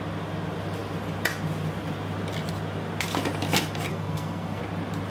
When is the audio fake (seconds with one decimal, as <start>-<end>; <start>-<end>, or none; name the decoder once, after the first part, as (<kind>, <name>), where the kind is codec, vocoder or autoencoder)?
3.9-4.6 (codec, SNAC)